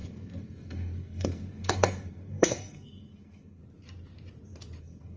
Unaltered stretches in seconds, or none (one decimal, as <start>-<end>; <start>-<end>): 3.6-4.8